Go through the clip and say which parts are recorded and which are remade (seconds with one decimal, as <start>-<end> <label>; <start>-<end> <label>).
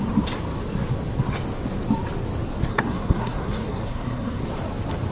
0.0-2.7 recorded; 2.7-4.4 remade; 4.4-5.1 recorded